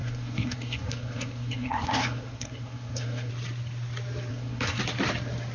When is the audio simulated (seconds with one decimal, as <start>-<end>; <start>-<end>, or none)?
0.0-3.3; 4.3-4.8